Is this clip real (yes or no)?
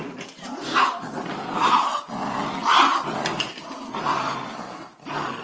yes